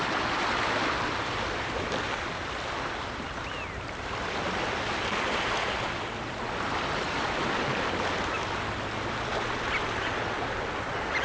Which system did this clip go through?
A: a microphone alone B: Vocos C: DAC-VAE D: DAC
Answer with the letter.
A